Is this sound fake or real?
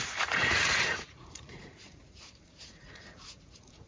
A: fake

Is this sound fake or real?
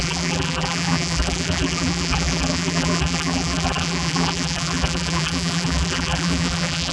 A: fake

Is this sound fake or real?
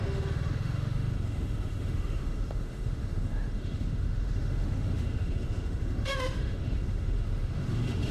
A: fake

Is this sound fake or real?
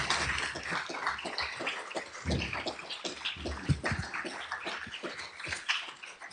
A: real